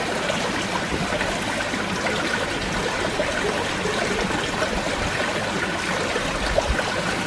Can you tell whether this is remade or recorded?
recorded